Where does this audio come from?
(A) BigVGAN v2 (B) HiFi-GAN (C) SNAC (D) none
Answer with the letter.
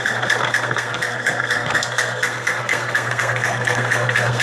C